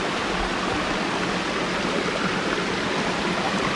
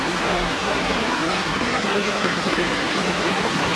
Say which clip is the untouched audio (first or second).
first